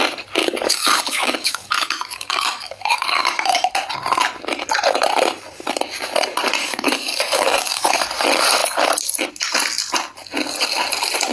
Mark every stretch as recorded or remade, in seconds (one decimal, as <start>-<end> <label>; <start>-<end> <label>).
0.0-0.4 recorded; 0.4-3.7 remade; 3.7-6.6 recorded; 6.6-7.9 remade; 7.9-11.3 recorded